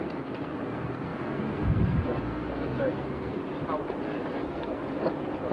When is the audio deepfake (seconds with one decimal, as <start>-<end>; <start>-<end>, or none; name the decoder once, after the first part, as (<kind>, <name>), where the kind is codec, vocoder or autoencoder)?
0.0-3.4 (codec, SNAC); 4.3-4.8